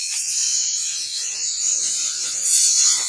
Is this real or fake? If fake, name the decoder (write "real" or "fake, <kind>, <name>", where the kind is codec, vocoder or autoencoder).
fake, vocoder, Vocos